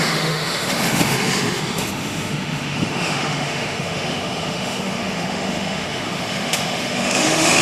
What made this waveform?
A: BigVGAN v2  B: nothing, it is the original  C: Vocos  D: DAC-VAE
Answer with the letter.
D